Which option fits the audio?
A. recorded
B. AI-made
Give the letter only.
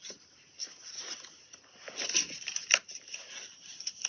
A